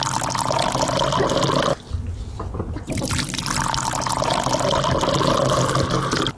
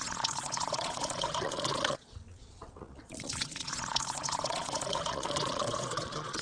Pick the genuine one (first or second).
first